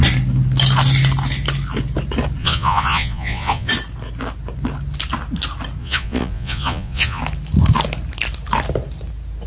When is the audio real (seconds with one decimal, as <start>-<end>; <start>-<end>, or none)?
0.0-2.4; 3.7-5.8; 7.2-9.5